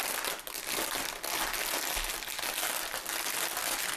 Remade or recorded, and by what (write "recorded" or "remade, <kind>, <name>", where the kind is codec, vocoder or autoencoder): recorded